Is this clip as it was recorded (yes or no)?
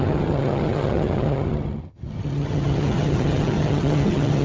no